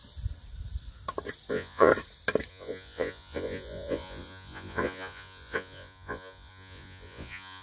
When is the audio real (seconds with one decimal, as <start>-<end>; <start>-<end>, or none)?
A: 0.0-1.5; 1.9-2.5